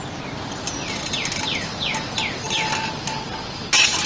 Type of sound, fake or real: real